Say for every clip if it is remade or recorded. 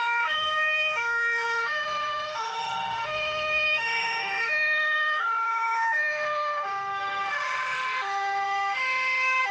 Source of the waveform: remade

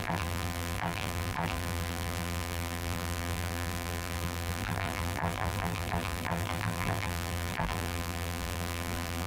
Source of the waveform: remade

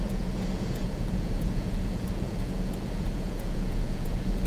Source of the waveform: remade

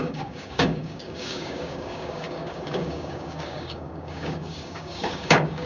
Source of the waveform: remade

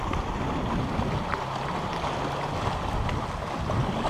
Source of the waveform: recorded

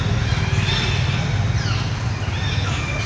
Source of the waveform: recorded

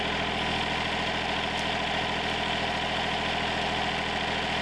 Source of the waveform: recorded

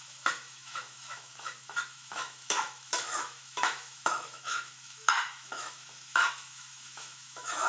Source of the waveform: remade